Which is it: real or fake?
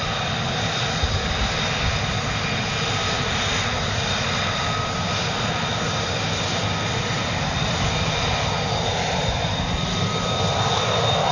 real